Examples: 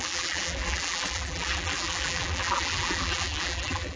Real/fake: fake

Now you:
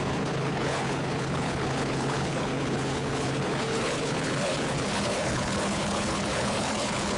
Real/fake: fake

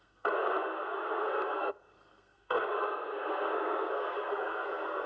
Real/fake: fake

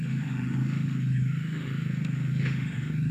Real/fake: fake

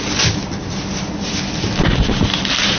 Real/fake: real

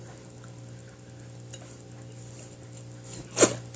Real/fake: real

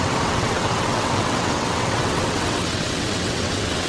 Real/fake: fake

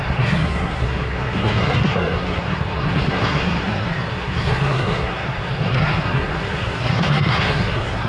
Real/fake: fake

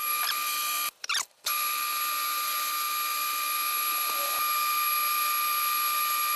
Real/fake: fake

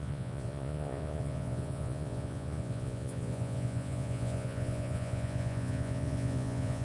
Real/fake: fake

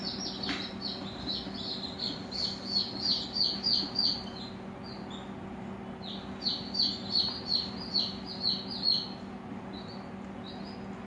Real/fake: real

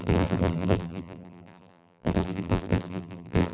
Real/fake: fake